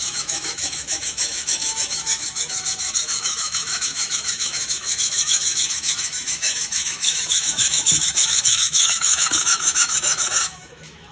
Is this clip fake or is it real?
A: fake